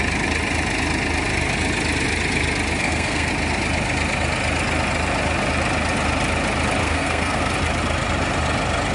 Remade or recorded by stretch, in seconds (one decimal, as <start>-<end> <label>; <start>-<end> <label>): 0.0-2.8 recorded; 2.8-3.3 remade; 3.3-6.8 recorded; 6.8-7.5 remade; 7.5-8.9 recorded